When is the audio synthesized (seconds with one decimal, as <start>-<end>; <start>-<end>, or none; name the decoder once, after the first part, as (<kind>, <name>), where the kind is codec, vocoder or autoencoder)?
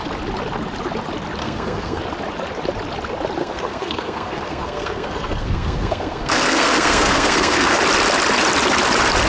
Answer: 1.4-2.0 (codec, SNAC); 3.4-7.8